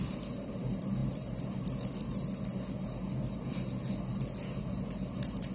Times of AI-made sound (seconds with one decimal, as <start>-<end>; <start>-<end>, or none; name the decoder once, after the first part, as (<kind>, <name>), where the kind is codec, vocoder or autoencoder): none